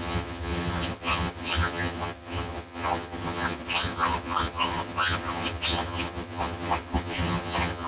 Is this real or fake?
fake